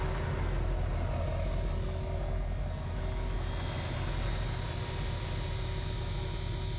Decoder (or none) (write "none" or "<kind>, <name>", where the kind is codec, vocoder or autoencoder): none